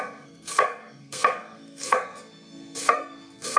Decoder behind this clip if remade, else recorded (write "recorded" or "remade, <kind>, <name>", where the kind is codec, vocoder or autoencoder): remade, codec, SNAC